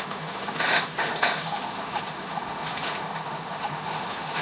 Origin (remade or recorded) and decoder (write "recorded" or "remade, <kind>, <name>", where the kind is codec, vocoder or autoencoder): remade, autoencoder, DAC-VAE